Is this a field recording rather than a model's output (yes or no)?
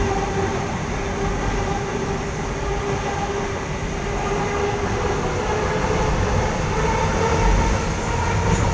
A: yes